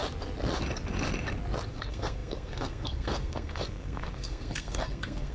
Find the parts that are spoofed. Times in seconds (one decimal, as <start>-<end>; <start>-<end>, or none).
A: 1.7-5.3